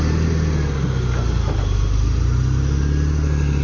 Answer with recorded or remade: recorded